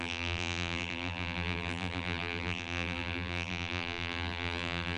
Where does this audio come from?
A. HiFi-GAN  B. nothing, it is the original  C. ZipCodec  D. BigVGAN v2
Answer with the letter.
D